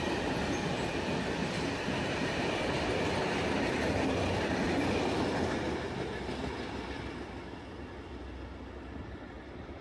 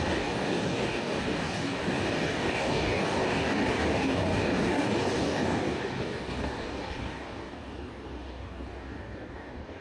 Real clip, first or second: first